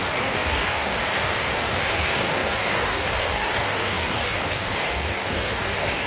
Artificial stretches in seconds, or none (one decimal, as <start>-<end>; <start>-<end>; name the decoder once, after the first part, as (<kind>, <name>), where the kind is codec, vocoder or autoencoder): 0.0-6.1 (codec, DAC)